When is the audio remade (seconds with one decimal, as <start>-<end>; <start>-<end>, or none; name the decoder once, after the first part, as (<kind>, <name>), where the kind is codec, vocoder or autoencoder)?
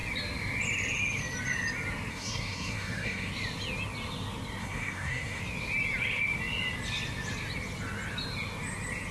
2.1-3.3 (codec, SNAC); 4.6-5.4